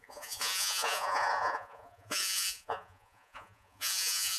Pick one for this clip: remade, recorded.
remade